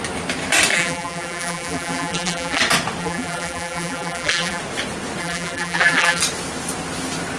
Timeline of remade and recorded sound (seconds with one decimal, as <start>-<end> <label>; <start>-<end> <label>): 0.0-0.7 recorded; 0.7-2.6 remade; 2.6-3.0 recorded; 3.0-4.6 remade; 4.6-5.2 recorded; 5.2-6.2 remade; 6.2-7.4 recorded